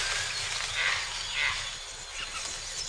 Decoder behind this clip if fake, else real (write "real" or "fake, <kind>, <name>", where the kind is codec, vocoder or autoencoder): real